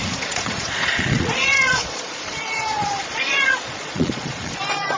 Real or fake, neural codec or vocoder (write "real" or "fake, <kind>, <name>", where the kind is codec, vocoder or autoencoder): fake, vocoder, Vocos